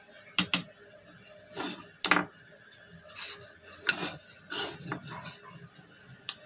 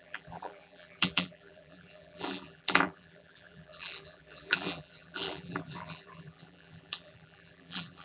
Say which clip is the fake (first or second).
second